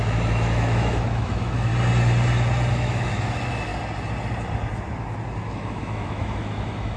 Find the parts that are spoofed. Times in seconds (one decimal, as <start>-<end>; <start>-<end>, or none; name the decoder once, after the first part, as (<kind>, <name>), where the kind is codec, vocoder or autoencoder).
0.0-1.7 (autoencoder, DAC-VAE); 2.7-3.7; 5.5-7.0